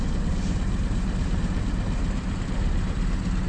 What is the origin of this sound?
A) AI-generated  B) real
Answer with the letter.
B